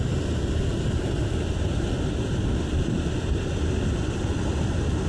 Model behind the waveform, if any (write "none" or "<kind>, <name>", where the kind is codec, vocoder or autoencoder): none